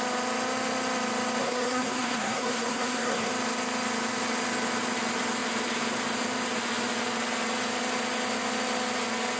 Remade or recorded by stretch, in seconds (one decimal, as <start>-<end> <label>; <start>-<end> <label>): 0.0-1.4 recorded; 1.4-3.3 remade; 3.3-9.4 recorded